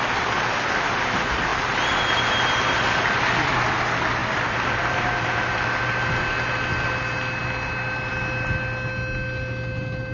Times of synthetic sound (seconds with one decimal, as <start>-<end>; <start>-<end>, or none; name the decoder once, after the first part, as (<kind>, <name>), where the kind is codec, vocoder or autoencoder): 1.5-2.6 (vocoder, BigVGAN v2); 4.2-6.3